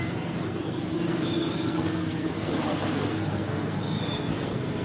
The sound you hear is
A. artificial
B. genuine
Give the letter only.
A